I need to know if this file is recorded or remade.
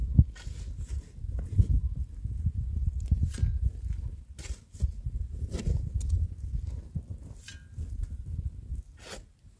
recorded